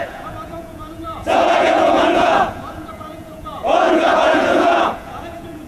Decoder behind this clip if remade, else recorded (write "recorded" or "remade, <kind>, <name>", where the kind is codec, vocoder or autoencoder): remade, vocoder, Vocos